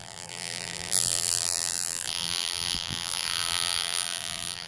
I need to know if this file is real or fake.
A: fake